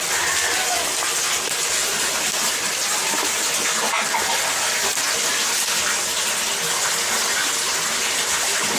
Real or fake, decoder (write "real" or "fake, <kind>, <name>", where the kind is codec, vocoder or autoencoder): real